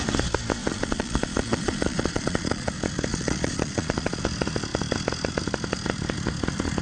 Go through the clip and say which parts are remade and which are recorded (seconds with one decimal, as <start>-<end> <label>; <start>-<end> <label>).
0.0-0.6 recorded; 0.6-2.7 remade; 2.7-3.1 recorded; 3.1-4.2 remade; 4.2-6.8 recorded

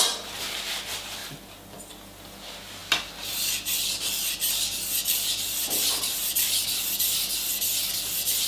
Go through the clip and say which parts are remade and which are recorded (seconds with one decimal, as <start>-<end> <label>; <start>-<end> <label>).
0.0-8.5 recorded

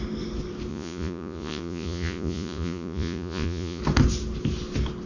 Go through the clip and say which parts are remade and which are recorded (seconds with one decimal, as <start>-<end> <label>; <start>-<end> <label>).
0.0-0.7 recorded; 0.7-3.8 remade; 3.8-5.1 recorded

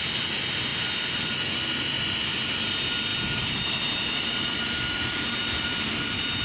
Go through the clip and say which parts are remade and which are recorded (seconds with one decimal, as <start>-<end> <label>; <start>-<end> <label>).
0.0-3.1 recorded; 3.1-5.9 remade; 5.9-6.4 recorded

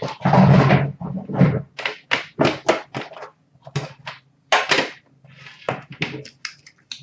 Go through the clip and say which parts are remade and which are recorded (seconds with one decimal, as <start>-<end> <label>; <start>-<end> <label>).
0.0-7.0 recorded

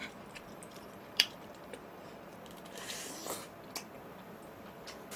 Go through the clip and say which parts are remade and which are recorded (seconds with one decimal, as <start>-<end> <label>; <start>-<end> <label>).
0.0-3.1 remade; 3.1-5.2 recorded

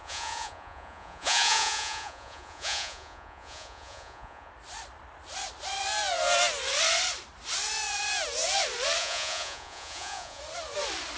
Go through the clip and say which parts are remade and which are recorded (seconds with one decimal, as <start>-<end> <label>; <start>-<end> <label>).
0.0-4.5 remade; 4.5-9.0 recorded; 9.0-10.4 remade; 10.4-11.2 recorded